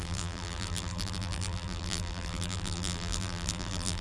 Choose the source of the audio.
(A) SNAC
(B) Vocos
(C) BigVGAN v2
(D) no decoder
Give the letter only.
C